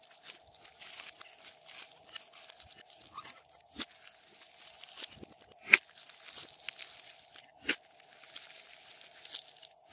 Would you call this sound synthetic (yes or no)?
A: no